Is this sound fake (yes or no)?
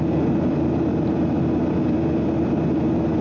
no